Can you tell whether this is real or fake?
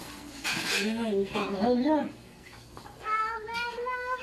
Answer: fake